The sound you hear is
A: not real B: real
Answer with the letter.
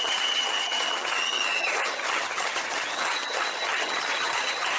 A